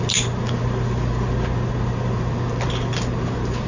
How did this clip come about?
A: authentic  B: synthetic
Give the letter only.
A